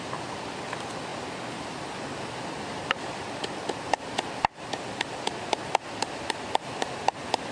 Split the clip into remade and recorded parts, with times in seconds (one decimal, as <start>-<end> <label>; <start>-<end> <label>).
0.0-7.5 recorded